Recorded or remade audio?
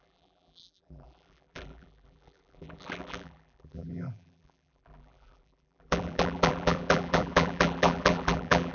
remade